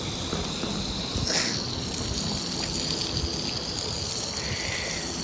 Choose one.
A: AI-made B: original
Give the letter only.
B